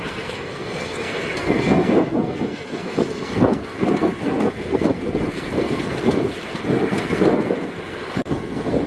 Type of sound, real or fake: fake